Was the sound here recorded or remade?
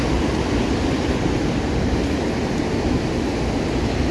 recorded